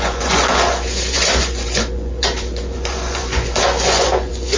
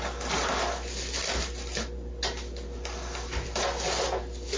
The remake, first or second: first